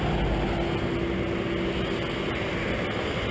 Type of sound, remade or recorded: recorded